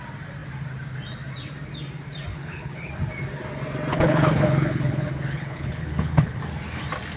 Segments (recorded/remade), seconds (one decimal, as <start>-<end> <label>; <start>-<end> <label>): 0.0-2.3 recorded; 2.3-2.9 remade; 2.9-3.9 recorded; 3.9-6.4 remade; 6.4-7.2 recorded